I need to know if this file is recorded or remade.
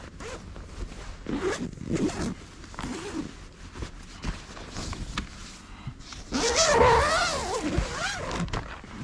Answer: recorded